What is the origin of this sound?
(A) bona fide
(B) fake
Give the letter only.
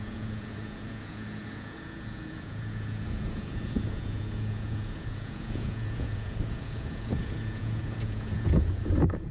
B